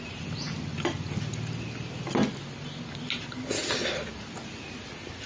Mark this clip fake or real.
real